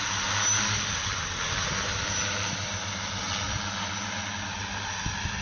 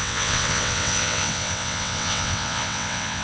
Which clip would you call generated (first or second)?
second